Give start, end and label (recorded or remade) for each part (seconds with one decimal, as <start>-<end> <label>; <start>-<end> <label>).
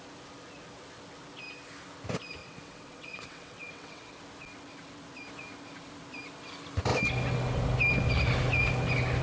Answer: 0.0-2.4 recorded; 2.4-4.2 remade; 4.2-9.2 recorded